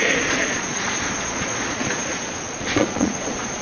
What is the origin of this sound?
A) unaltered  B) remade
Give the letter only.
B